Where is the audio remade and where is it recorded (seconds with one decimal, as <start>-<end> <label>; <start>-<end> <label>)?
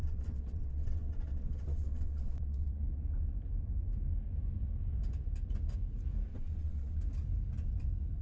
0.0-2.8 remade; 2.8-6.3 recorded; 6.3-7.0 remade; 7.0-8.2 recorded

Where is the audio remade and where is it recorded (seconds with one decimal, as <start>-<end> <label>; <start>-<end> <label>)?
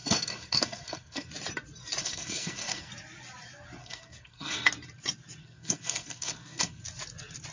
0.0-1.3 remade; 1.3-2.0 recorded; 2.0-2.9 remade; 2.9-3.8 recorded; 3.8-4.7 remade; 4.7-5.4 recorded; 5.4-6.8 remade; 6.8-7.5 recorded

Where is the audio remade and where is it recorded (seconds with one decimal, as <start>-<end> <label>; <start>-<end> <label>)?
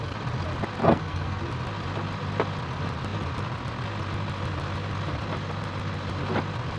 0.0-0.8 recorded; 0.8-1.4 remade; 1.4-6.8 recorded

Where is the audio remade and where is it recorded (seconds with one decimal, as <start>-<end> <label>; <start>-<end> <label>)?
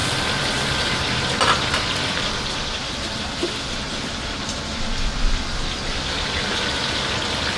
0.0-4.6 remade; 4.6-7.6 recorded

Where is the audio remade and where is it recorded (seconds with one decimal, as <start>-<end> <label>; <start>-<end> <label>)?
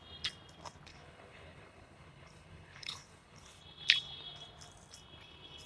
0.0-0.9 recorded; 0.9-3.6 remade; 3.6-5.7 recorded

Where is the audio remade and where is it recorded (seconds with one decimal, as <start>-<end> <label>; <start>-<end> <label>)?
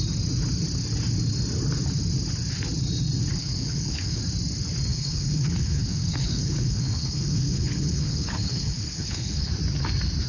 0.0-3.4 recorded; 3.4-4.2 remade; 4.2-4.9 recorded; 4.9-9.5 remade; 9.5-10.3 recorded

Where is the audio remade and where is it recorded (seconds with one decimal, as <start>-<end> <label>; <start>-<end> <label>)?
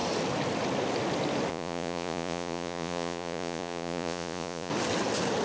0.0-1.5 recorded; 1.5-4.7 remade; 4.7-5.4 recorded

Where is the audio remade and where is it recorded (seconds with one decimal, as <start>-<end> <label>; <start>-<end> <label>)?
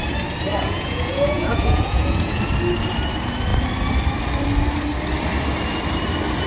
0.0-0.5 recorded; 0.5-2.4 remade; 2.4-6.5 recorded